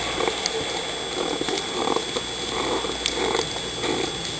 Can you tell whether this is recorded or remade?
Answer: recorded